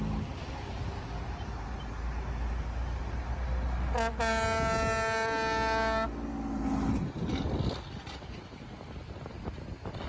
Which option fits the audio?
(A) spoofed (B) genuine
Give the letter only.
B